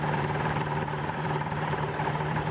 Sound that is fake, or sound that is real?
fake